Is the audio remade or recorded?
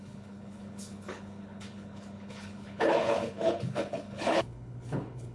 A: remade